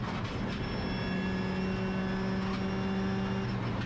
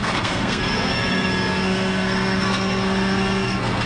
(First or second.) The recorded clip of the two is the first